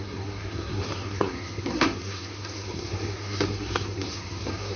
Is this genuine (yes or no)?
no